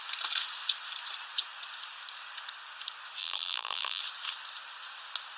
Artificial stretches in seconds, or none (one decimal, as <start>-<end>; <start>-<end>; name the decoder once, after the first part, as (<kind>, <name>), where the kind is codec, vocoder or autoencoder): 3.2-4.0 (vocoder, BigVGAN v2)